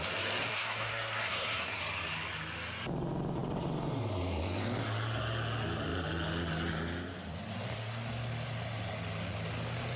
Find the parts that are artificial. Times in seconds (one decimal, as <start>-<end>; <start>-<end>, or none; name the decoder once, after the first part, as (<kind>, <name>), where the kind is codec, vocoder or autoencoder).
0.5-1.8 (codec, SNAC)